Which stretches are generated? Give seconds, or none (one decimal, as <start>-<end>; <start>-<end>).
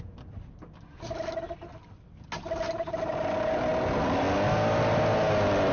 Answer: none